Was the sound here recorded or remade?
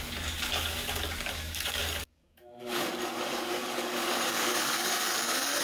remade